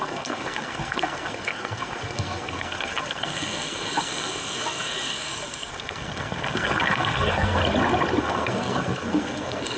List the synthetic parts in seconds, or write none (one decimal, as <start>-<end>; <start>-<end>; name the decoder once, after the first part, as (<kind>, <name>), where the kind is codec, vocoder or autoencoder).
0.0-7.6 (codec, SNAC); 8.2-9.8